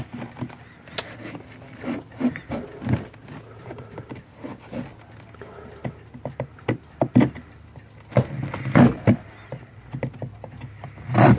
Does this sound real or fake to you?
real